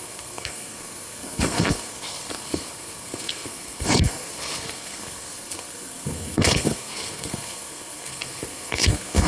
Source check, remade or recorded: remade